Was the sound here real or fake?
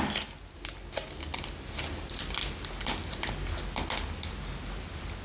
real